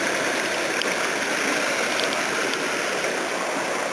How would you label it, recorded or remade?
recorded